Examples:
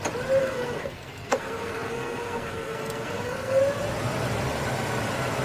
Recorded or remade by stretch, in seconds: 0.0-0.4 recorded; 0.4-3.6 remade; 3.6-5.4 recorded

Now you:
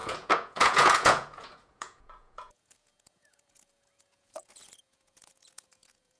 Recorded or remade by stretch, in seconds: 0.0-6.2 remade

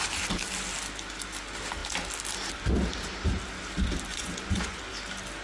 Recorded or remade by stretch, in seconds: 0.0-4.1 recorded; 4.1-4.8 remade; 4.8-5.4 recorded

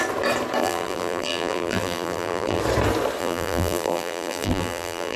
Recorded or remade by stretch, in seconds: 0.0-0.6 recorded; 0.6-2.6 remade; 2.6-3.2 recorded; 3.2-5.2 remade

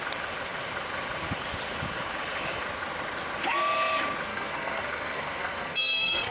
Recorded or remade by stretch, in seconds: 0.0-4.3 recorded; 4.3-6.3 remade

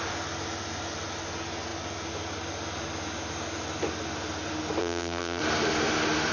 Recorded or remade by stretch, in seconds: 0.0-4.8 recorded; 4.8-5.4 remade; 5.4-6.3 recorded

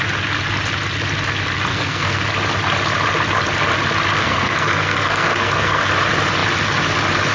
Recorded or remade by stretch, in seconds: 0.0-1.7 recorded; 1.7-2.3 remade; 2.3-4.1 recorded; 4.1-5.9 remade; 5.9-7.3 recorded